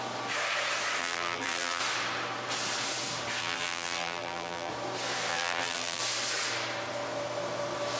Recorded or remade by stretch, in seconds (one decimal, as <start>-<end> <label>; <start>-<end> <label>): 0.0-1.0 recorded; 1.0-1.8 remade; 1.8-3.4 recorded; 3.4-4.7 remade; 4.7-5.3 recorded; 5.3-6.0 remade; 6.0-8.0 recorded